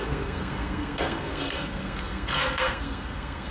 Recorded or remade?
remade